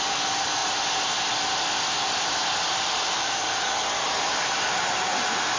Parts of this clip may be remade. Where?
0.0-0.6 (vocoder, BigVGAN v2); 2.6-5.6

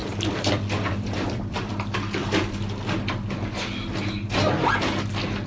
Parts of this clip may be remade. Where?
0.0-1.7 (vocoder, BigVGAN v2)

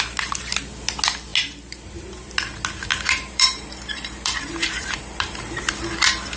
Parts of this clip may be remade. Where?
2.9-5.7 (vocoder, BigVGAN v2)

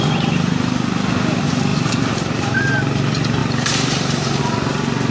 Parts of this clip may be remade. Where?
1.7-2.7 (vocoder, BigVGAN v2); 3.4-4.4

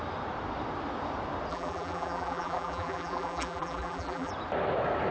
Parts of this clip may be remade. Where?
1.5-4.3 (vocoder, BigVGAN v2)